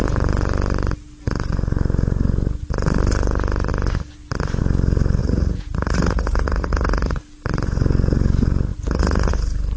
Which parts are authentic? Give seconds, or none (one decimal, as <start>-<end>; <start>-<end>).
0.0-5.2; 7.2-8.7; 9.3-9.8

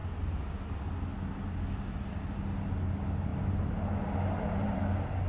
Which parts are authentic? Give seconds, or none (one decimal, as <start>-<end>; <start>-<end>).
0.0-3.3; 4.8-5.3

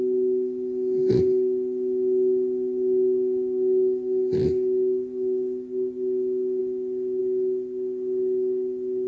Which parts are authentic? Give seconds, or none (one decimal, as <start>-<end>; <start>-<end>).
0.0-9.1

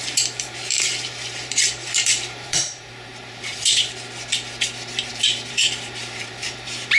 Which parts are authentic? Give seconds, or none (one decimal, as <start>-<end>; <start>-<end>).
3.8-5.1

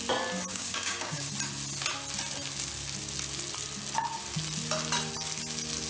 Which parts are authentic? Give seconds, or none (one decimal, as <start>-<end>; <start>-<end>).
0.0-0.5; 1.3-5.9

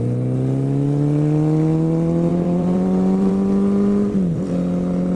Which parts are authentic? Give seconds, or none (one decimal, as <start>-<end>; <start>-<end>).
0.0-2.3; 3.3-5.1